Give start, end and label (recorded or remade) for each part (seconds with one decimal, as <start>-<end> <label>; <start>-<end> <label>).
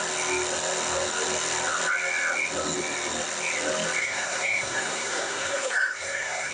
0.0-4.0 recorded; 4.0-6.5 remade